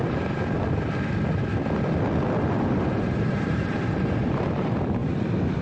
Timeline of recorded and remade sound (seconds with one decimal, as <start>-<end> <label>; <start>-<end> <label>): 0.0-2.7 recorded; 2.7-5.0 remade; 5.0-5.6 recorded